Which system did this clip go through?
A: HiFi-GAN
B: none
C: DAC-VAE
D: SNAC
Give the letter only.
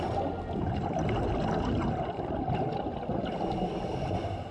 B